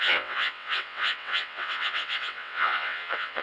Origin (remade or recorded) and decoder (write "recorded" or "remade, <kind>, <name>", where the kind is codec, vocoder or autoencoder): remade, vocoder, WaveNeXt